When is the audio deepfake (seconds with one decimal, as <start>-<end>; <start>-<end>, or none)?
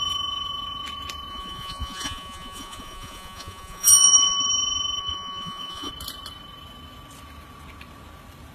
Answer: 1.3-4.5; 5.0-5.9